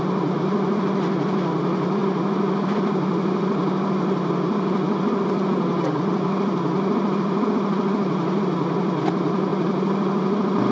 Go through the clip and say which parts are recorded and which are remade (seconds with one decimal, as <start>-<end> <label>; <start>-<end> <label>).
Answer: 0.0-10.7 recorded